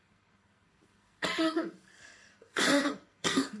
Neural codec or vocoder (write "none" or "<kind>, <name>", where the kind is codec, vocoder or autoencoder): codec, SNAC